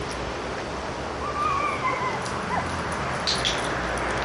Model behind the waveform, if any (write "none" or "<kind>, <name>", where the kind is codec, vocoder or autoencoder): none